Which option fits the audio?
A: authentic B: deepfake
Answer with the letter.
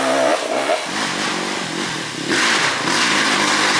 A